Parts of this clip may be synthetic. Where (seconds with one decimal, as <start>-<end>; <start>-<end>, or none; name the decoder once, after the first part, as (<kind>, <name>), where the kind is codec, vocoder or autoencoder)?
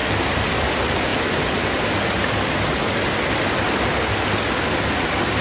none